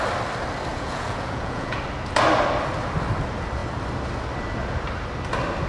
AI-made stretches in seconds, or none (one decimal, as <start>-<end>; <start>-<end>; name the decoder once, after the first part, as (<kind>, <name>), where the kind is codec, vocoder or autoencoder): 0.7-1.8 (vocoder, Vocos)